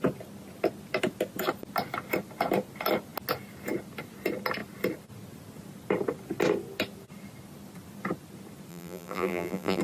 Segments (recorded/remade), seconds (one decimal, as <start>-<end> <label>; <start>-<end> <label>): 0.0-8.7 recorded; 8.7-9.8 remade